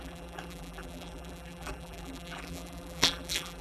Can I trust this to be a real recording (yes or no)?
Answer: no